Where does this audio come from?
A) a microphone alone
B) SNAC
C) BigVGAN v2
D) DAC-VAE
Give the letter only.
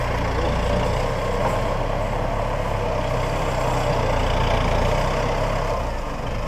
A